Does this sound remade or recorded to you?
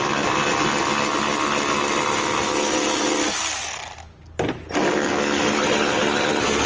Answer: recorded